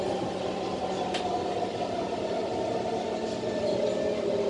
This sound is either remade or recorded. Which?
recorded